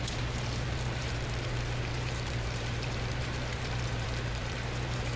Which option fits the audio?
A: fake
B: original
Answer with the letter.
A